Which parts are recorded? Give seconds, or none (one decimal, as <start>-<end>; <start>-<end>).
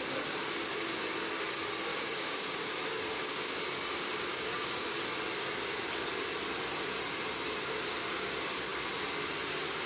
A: 0.0-1.9; 3.6-4.3; 5.0-9.9